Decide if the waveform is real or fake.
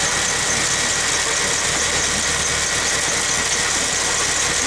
real